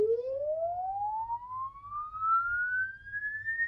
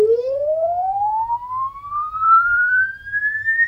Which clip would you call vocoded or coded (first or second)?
second